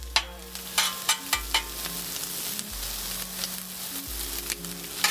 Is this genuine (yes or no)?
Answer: yes